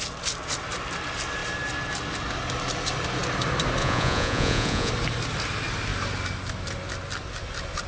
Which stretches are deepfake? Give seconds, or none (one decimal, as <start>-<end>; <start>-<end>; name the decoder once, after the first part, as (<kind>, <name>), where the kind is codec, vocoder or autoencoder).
3.8-4.9 (vocoder, Vocos)